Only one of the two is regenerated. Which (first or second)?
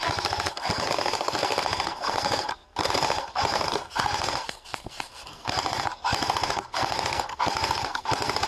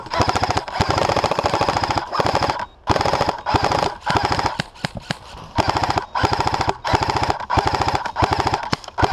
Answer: first